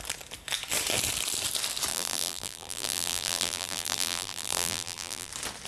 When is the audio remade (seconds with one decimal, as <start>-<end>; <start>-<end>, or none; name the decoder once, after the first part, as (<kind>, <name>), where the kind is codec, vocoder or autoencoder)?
1.9-5.3 (vocoder, BigVGAN v2)